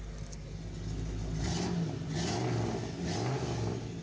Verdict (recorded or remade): recorded